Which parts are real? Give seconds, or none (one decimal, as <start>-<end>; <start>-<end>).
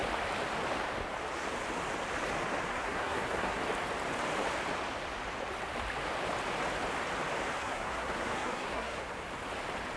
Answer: 0.0-2.7; 3.6-7.6; 9.2-10.0